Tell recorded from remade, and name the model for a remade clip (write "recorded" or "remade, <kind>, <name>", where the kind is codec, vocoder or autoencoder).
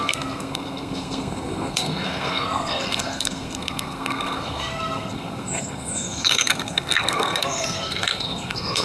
remade, codec, SNAC